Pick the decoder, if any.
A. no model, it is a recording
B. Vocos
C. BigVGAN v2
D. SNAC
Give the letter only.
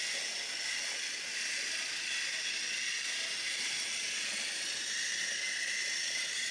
A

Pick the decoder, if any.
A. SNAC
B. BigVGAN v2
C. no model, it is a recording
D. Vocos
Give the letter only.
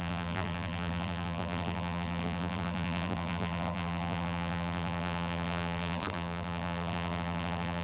B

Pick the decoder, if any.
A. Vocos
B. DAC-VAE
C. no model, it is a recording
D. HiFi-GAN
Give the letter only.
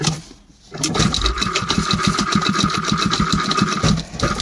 C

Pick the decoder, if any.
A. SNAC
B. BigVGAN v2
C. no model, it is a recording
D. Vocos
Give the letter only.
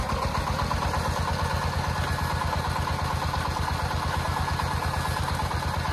C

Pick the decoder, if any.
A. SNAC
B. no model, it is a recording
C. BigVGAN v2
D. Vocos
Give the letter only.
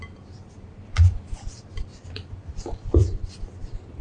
C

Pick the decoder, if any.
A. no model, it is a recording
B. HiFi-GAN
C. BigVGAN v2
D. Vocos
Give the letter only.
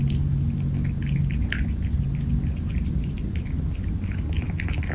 A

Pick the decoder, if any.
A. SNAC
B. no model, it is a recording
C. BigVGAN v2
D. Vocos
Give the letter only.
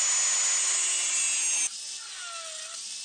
B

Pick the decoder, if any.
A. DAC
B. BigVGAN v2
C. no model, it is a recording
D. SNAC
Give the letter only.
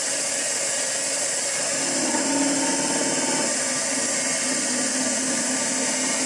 B